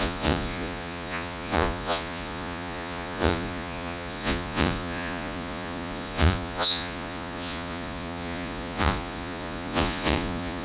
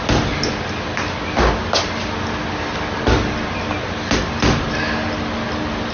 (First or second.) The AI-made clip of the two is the first